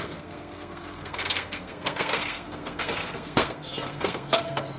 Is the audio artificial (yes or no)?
yes